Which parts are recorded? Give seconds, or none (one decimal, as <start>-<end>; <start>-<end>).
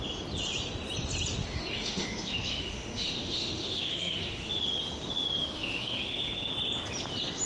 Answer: 0.0-1.4; 4.6-5.4; 6.5-7.5